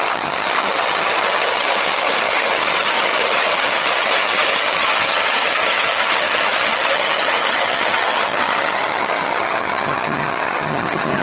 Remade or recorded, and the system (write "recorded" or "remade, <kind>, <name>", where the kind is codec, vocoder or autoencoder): remade, vocoder, HiFi-GAN